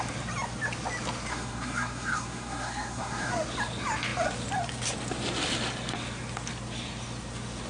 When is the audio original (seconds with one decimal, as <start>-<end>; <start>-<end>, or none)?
0.0-1.3; 3.3-7.7